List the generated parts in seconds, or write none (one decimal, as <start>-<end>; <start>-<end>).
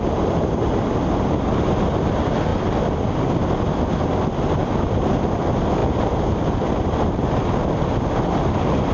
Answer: none